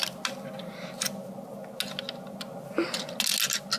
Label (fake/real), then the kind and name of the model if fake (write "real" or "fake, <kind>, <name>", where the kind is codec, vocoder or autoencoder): real